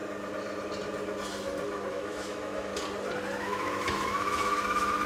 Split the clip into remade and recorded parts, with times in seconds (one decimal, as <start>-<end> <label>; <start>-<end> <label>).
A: 0.0-1.9 recorded; 1.9-2.7 remade; 2.7-3.4 recorded; 3.4-5.1 remade